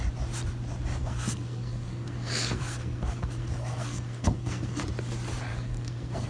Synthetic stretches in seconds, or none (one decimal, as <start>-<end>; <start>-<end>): 1.0-4.8; 5.5-6.3